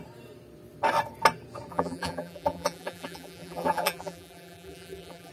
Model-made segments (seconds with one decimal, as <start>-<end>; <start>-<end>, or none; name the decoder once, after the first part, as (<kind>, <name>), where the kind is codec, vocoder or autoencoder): 1.7-5.3 (vocoder, BigVGAN v2)